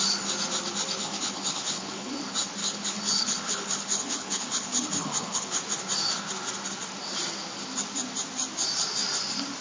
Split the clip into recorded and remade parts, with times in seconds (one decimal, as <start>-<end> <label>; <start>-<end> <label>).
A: 0.0-1.0 recorded; 1.0-2.1 remade; 2.1-2.6 recorded; 2.6-5.6 remade; 5.6-9.6 recorded

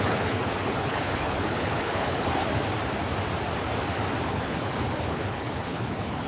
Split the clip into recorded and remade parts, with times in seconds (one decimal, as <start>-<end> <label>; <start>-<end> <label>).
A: 0.0-2.5 remade; 2.5-4.3 recorded; 4.3-6.3 remade

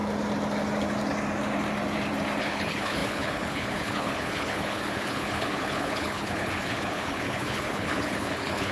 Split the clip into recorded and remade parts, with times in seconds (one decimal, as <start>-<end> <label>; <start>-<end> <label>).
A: 0.0-2.4 recorded; 2.4-8.7 remade

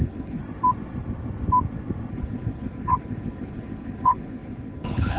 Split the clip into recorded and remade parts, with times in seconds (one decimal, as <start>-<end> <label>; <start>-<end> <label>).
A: 0.0-0.4 remade; 0.4-2.1 recorded; 2.1-5.2 remade

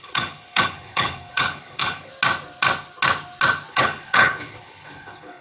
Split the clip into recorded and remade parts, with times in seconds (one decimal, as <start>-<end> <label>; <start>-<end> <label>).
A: 0.0-2.1 remade; 2.1-3.7 recorded; 3.7-5.4 remade